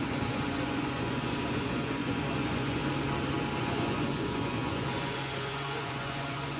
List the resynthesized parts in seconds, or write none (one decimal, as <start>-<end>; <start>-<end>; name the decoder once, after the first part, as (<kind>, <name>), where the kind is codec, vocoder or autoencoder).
0.0-2.8 (vocoder, Vocos); 3.6-6.6